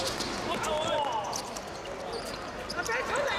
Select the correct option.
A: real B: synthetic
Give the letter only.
A